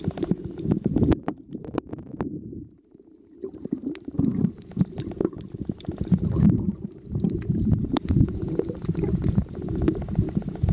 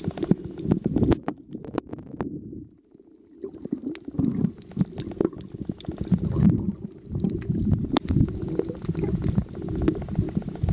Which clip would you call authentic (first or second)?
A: second